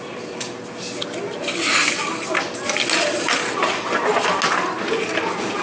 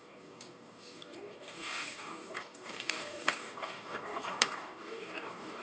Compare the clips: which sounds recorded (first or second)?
first